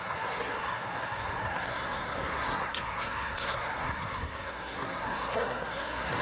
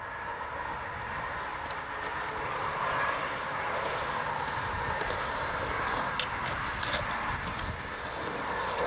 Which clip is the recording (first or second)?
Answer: second